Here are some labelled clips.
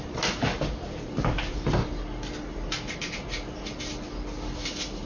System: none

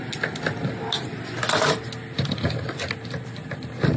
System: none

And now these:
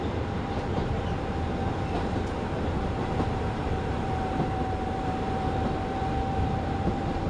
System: vocoder, BigVGAN v2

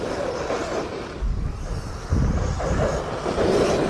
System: none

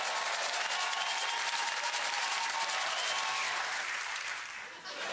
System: none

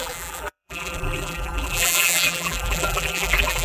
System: vocoder, BigVGAN v2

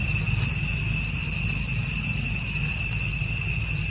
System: none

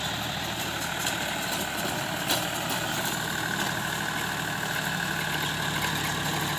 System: none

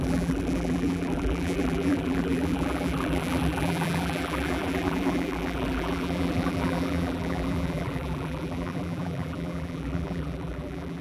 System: vocoder, BigVGAN v2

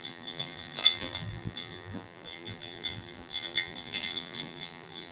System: vocoder, BigVGAN v2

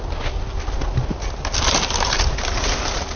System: none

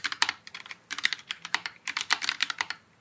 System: vocoder, BigVGAN v2